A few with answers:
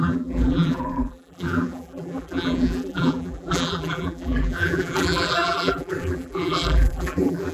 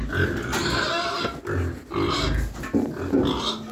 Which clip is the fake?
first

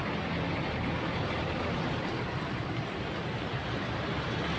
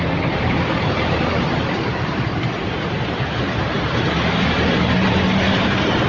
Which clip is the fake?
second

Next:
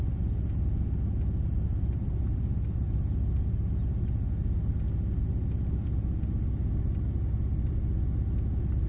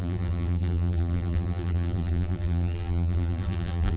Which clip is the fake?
second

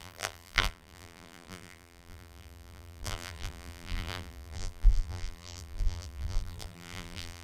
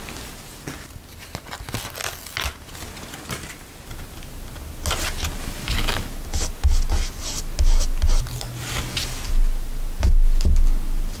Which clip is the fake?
first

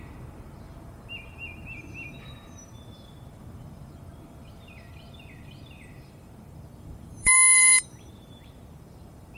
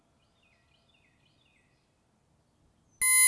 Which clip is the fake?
first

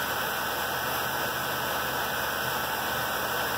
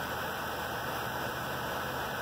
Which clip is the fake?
second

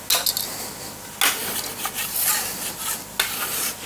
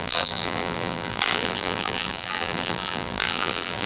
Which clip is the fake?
second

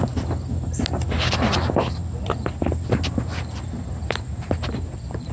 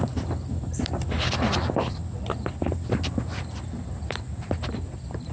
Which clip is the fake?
second